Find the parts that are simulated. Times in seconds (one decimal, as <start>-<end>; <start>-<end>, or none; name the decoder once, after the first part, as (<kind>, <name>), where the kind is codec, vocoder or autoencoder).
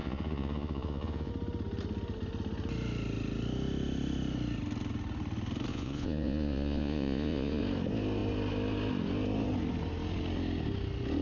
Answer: 0.0-1.3 (vocoder, Vocos); 5.7-7.6